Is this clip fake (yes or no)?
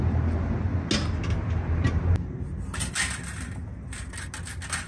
no